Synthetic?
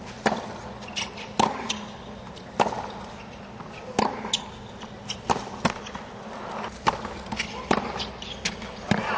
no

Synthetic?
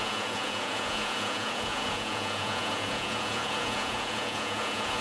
yes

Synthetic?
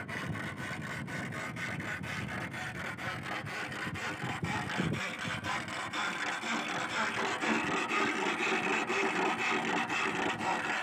no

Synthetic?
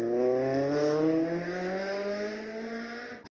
no